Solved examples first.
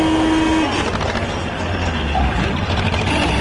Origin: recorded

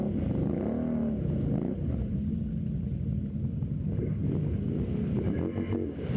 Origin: recorded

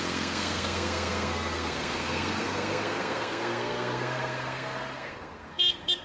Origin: remade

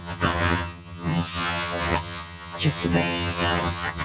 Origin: remade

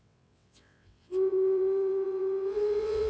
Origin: remade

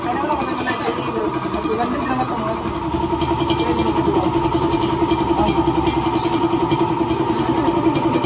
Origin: recorded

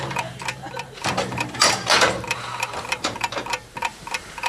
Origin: remade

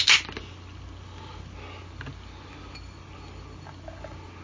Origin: recorded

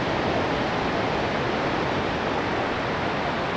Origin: recorded